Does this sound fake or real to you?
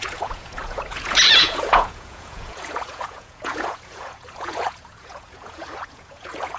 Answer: fake